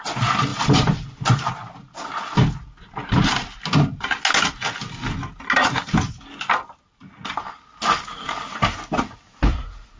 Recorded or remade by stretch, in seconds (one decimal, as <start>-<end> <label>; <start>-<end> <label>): 0.0-0.5 recorded; 0.5-1.5 remade; 1.5-10.0 recorded